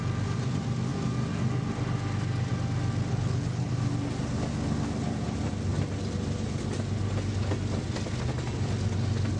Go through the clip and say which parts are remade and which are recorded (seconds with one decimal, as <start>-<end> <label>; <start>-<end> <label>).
0.0-3.1 recorded; 3.1-3.7 remade; 3.7-9.4 recorded